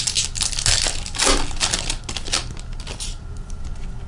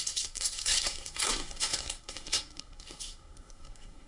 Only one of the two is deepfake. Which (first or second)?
second